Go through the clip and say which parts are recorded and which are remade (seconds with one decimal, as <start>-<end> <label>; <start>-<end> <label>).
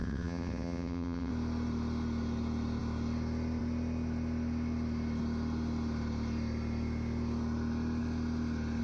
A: 0.0-1.3 remade; 1.3-8.8 recorded